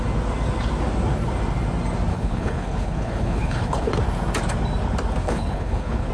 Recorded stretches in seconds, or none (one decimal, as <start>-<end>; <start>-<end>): 0.0-2.1; 3.9-5.2

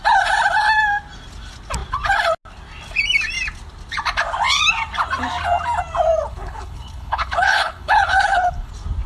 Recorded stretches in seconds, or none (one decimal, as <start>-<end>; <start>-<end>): 0.0-6.3; 8.7-9.1

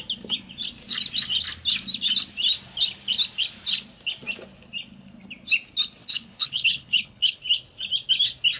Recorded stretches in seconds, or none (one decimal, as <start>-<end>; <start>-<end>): 0.0-6.0; 7.4-8.6

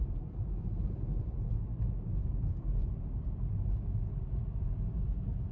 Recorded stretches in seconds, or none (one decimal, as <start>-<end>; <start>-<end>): 0.0-5.5

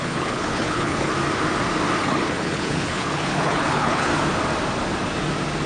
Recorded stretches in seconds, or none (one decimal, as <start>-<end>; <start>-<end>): 1.1-2.0; 4.1-5.7

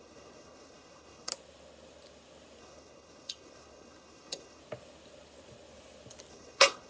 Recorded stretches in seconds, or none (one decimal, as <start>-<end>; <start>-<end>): 1.3-2.6; 4.6-6.3